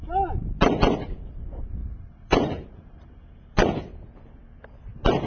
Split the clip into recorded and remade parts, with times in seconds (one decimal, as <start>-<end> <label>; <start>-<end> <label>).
0.0-1.8 recorded; 1.8-3.1 remade; 3.1-5.3 recorded